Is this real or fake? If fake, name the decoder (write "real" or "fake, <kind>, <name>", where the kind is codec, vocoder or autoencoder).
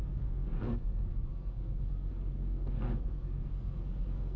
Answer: fake, codec, SNAC